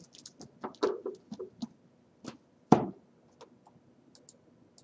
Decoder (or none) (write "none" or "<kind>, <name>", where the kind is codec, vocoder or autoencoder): none